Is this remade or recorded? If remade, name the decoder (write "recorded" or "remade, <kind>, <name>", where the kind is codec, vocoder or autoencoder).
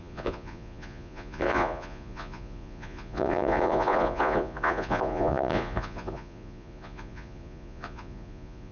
remade, vocoder, Vocos